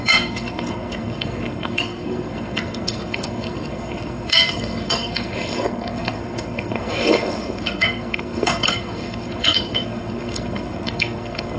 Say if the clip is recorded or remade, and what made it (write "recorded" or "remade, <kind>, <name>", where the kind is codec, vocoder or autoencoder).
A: remade, codec, SNAC